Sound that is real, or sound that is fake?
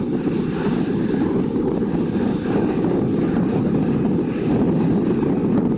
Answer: real